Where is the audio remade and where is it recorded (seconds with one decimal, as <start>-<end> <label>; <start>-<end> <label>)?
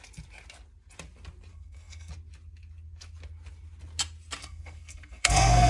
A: 0.0-1.5 recorded; 1.5-2.1 remade; 2.1-4.4 recorded; 4.4-5.7 remade